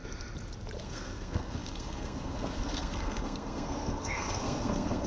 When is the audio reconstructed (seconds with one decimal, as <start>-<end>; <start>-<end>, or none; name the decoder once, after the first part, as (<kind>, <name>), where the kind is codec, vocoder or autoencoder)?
0.8-5.1 (codec, SNAC)